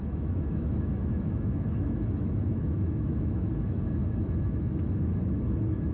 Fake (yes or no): yes